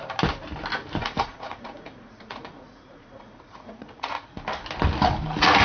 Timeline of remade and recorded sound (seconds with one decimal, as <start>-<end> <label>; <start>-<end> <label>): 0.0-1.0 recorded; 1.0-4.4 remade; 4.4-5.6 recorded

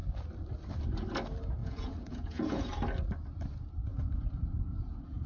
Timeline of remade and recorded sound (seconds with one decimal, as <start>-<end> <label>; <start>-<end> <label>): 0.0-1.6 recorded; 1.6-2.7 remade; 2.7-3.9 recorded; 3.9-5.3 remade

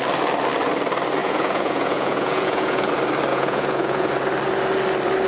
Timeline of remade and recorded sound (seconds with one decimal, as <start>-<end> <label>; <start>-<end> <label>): 0.0-1.2 recorded; 1.2-2.9 remade; 2.9-3.3 recorded; 3.3-4.1 remade; 4.1-5.3 recorded

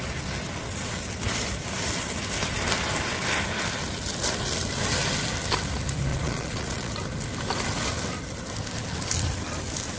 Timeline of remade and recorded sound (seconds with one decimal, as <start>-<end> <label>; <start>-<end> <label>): 0.0-6.1 recorded; 6.1-6.9 remade; 6.9-10.0 recorded

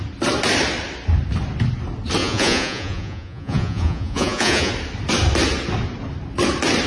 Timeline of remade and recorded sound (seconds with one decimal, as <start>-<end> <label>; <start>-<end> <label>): 0.0-2.2 recorded; 2.2-4.7 remade; 4.7-6.9 recorded

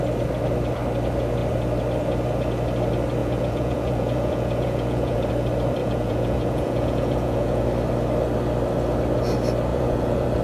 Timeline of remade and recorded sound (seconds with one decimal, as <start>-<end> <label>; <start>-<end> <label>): 0.0-3.2 recorded; 3.2-5.3 remade; 5.3-5.8 recorded; 5.8-7.6 remade; 7.6-9.7 recorded; 9.7-10.4 remade